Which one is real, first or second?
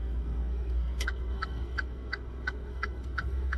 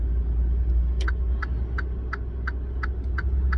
second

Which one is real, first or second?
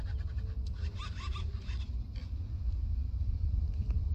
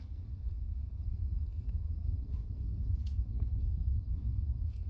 first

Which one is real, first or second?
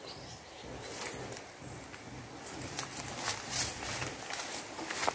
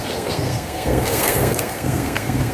first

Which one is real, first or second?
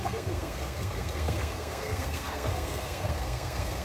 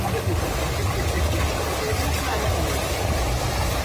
second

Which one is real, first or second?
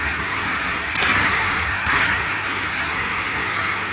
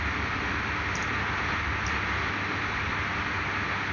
second